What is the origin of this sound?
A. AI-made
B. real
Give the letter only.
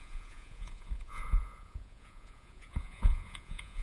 A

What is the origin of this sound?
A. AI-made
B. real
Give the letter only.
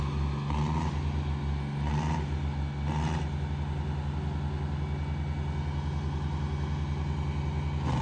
B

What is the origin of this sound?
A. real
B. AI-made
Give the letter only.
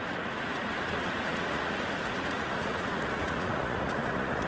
B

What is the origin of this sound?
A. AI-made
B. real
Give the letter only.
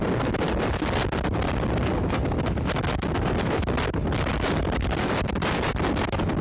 B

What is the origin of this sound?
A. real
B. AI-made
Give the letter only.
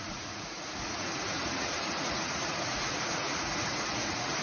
B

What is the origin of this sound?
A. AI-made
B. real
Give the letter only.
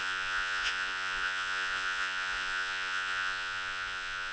A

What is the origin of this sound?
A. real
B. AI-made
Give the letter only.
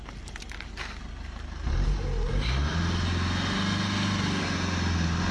A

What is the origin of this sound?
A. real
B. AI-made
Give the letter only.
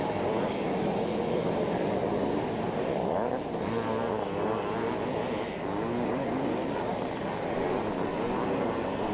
A